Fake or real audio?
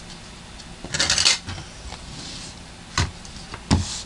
real